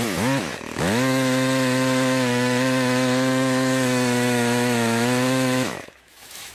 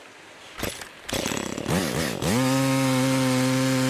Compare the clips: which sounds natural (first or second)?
second